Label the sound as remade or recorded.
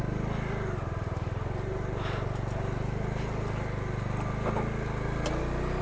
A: recorded